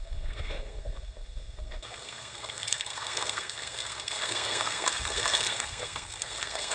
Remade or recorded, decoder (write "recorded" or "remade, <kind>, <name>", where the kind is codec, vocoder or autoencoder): remade, codec, SNAC